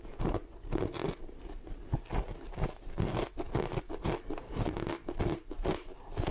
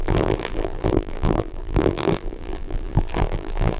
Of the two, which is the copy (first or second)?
second